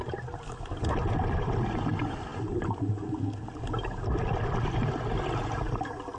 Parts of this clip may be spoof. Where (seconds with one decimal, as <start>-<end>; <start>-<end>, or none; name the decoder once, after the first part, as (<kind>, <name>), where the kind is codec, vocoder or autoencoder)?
none